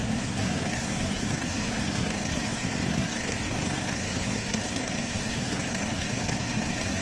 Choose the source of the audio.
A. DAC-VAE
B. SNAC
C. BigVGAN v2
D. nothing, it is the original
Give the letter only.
B